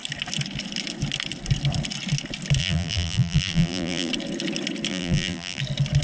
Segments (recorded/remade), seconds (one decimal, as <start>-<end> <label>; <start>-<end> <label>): 0.0-2.6 recorded; 2.6-4.1 remade; 4.1-4.9 recorded; 4.9-5.6 remade; 5.6-6.0 recorded